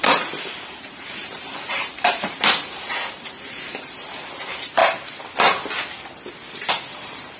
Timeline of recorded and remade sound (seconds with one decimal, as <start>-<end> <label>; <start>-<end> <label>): 0.0-4.8 remade; 4.8-6.7 recorded; 6.7-7.4 remade